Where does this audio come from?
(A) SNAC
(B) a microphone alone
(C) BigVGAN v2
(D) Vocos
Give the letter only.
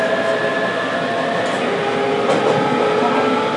B